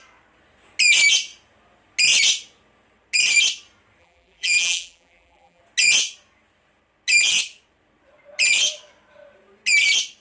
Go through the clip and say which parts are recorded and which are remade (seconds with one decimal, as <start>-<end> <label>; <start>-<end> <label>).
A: 0.0-4.0 recorded; 4.0-5.6 remade; 5.6-10.2 recorded